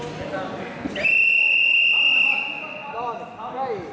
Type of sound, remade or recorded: recorded